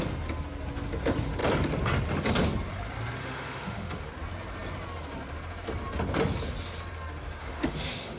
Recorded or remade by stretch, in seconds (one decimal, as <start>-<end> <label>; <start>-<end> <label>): 0.0-3.2 recorded; 3.2-4.1 remade; 4.1-7.4 recorded; 7.4-8.2 remade